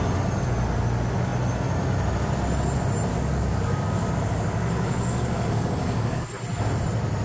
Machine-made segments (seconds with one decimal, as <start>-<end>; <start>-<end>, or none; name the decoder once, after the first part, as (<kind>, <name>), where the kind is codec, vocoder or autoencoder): 3.1-6.3 (codec, DAC)